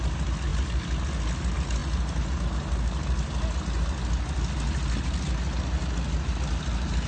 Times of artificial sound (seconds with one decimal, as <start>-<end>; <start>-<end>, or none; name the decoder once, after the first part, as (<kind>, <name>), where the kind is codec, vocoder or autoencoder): none